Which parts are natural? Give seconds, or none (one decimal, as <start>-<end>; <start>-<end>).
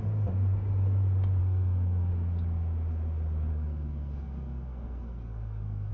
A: 0.0-1.4; 2.1-3.5